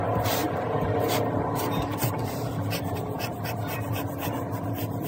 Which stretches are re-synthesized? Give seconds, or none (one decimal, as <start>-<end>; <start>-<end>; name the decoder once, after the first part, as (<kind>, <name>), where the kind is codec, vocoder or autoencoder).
none